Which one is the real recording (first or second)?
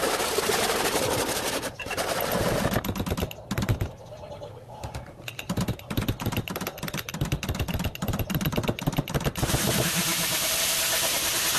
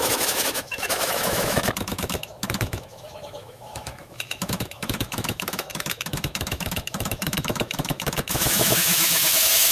first